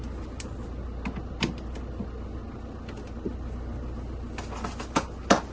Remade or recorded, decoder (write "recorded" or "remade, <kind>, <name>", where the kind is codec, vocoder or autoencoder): recorded